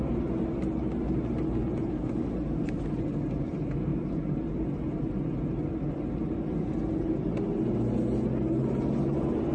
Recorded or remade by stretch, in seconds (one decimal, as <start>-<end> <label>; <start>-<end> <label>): 0.0-9.5 recorded